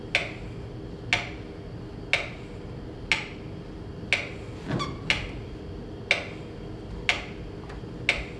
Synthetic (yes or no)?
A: no